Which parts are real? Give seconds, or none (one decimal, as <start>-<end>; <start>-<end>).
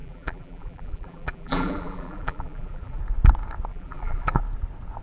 3.0-3.7; 4.4-5.0